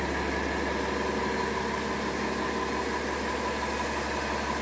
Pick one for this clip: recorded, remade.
recorded